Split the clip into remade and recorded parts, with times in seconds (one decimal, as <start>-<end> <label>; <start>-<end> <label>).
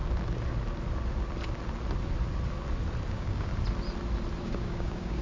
0.0-3.1 recorded; 3.1-3.5 remade; 3.5-4.4 recorded; 4.4-5.2 remade